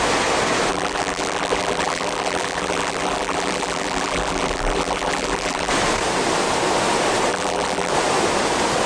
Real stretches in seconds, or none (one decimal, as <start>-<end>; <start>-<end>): 0.0-0.7; 5.7-7.3; 7.9-8.9